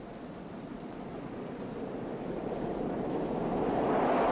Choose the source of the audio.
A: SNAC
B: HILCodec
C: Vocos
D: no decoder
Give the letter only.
D